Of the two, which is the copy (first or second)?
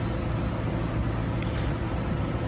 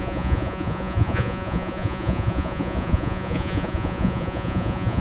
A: second